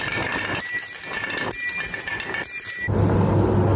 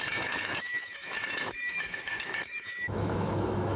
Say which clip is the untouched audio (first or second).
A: first